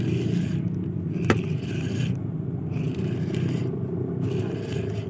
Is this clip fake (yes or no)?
no